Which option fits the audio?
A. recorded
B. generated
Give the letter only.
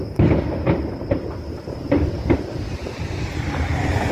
A